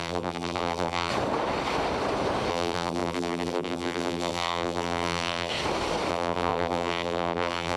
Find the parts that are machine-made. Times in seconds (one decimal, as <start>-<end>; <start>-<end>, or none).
0.0-1.1; 2.5-5.5; 6.1-7.8